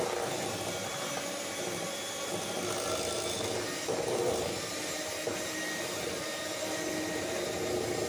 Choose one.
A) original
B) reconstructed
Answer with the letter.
A